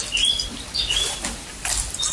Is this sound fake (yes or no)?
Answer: no